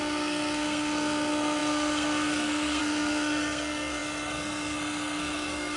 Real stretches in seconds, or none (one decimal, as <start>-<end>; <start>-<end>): none